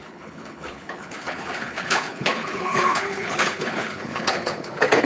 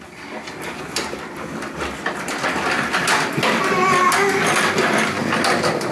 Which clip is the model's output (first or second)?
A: first